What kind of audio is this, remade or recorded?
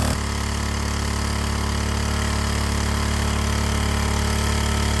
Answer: recorded